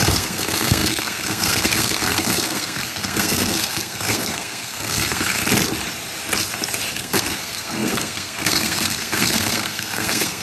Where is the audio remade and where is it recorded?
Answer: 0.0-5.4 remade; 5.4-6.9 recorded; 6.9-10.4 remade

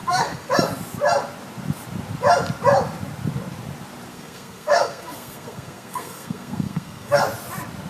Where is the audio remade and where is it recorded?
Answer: 0.0-0.5 remade; 0.5-4.1 recorded; 4.1-7.2 remade; 7.2-7.9 recorded

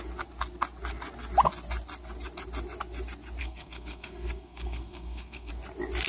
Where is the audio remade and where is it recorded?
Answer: 0.0-3.4 recorded; 3.4-5.5 remade; 5.5-6.1 recorded

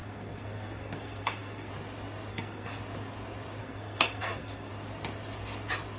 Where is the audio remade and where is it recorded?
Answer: 0.0-1.7 remade; 1.7-2.3 recorded; 2.3-2.8 remade; 2.8-3.6 recorded; 3.6-4.7 remade; 4.7-6.0 recorded

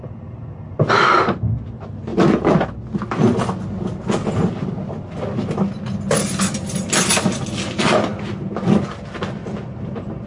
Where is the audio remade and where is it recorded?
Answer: 0.0-10.3 recorded